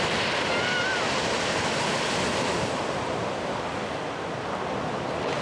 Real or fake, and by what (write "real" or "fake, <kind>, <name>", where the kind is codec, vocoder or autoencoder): real